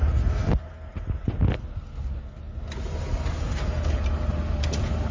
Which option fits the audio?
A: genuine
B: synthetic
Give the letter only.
A